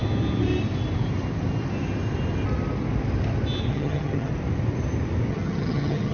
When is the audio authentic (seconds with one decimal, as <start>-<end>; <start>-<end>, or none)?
0.0-3.7; 4.3-5.3